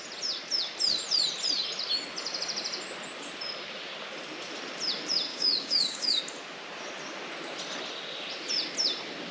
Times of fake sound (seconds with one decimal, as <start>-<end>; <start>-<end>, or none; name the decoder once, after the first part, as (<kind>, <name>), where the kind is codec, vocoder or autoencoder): 5.3-6.2 (codec, DAC)